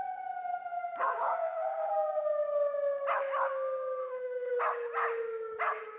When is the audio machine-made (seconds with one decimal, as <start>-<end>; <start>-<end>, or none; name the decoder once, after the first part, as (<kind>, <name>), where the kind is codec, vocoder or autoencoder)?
1.4-1.9 (autoencoder, DAC-VAE); 4.0-4.6